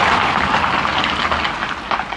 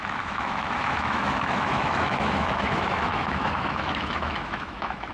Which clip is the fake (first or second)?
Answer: second